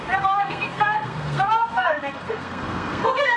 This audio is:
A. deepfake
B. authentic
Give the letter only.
A